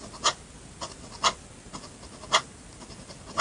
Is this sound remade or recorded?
recorded